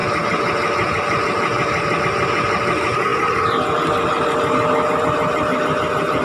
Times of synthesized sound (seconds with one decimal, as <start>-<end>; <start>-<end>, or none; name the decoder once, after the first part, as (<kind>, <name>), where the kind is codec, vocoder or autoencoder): none